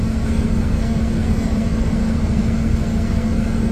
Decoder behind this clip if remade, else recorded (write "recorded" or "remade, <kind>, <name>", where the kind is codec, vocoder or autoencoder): remade, codec, SNAC